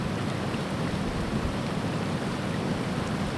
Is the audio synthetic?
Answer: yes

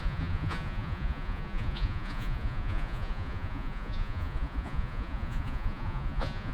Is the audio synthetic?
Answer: yes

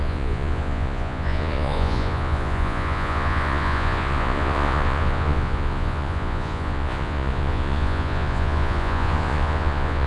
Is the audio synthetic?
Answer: yes